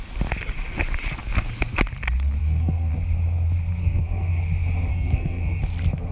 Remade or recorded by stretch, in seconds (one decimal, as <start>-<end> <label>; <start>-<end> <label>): 0.0-2.4 recorded; 2.4-2.9 remade; 2.9-3.8 recorded; 3.8-4.4 remade; 4.4-4.9 recorded; 4.9-5.6 remade; 5.6-6.1 recorded